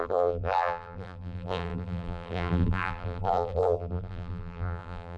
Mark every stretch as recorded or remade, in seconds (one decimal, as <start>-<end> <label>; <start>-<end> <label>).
0.0-5.2 remade